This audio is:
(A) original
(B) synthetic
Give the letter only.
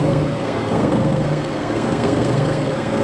B